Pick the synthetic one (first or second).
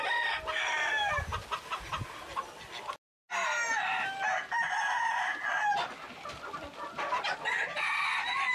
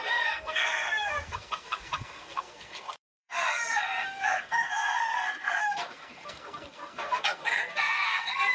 second